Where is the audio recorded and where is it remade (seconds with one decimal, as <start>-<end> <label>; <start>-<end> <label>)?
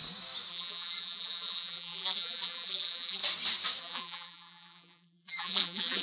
0.0-0.5 recorded; 0.5-3.2 remade; 3.2-3.8 recorded; 3.8-6.0 remade